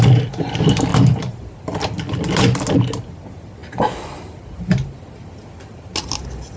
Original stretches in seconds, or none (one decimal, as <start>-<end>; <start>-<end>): 0.0-6.6